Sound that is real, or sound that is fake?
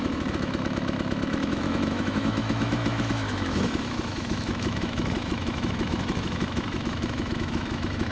fake